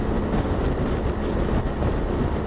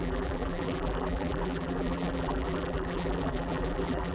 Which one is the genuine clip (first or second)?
first